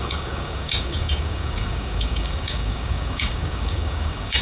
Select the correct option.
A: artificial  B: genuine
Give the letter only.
A